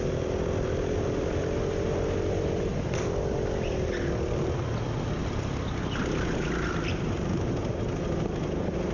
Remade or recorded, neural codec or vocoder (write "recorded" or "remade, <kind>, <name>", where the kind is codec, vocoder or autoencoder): recorded